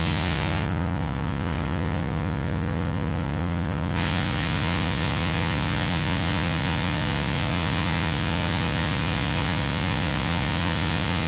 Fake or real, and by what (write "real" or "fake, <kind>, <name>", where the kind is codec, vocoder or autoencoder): fake, vocoder, Vocos